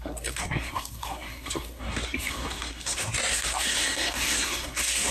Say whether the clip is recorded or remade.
remade